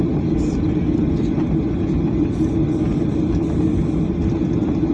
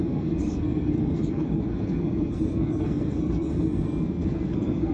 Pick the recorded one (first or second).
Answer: first